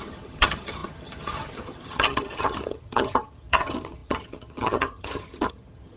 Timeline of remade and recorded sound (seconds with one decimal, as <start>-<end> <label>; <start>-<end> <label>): 0.0-6.0 remade